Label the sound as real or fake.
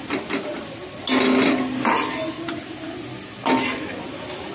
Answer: real